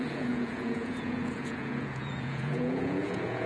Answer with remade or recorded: remade